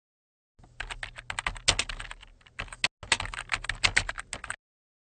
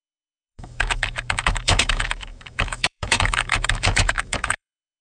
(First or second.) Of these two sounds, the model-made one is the second